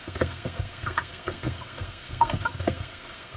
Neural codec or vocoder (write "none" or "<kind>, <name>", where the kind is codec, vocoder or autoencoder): codec, SNAC